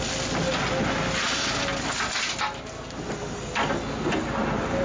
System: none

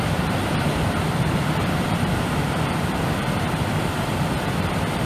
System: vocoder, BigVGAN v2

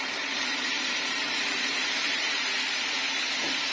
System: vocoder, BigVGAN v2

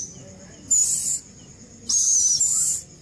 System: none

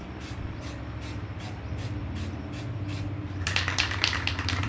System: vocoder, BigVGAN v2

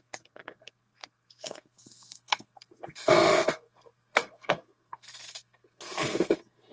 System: codec, SNAC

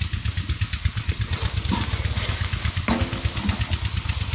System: none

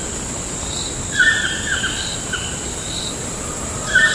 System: none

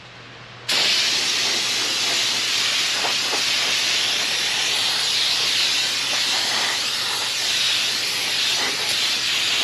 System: none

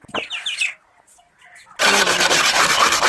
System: none